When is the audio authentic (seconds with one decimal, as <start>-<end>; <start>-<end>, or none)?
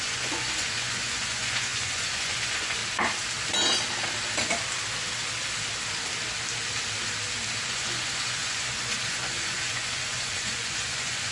2.8-7.7